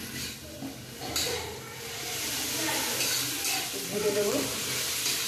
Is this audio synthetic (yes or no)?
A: no